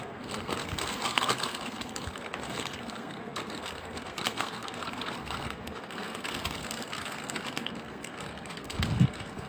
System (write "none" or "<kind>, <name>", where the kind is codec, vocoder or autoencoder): codec, SNAC